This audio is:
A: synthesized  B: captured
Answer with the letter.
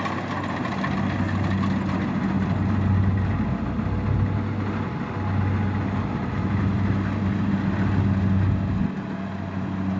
B